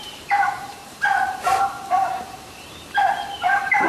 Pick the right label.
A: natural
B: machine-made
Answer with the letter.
B